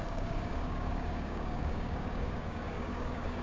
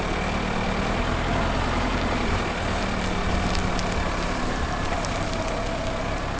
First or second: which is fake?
first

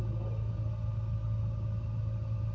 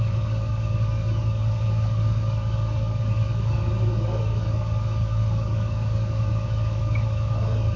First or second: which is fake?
second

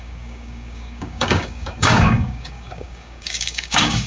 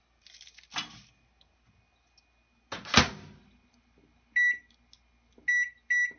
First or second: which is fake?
first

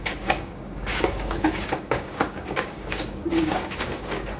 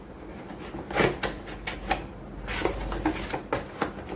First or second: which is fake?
first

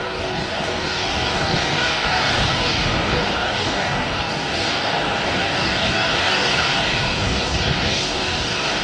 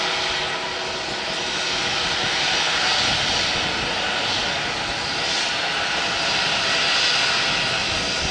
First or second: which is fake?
first